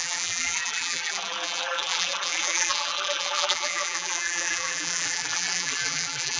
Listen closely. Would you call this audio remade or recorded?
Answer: remade